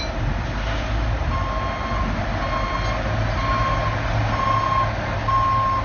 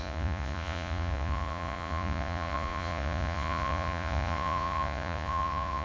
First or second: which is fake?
second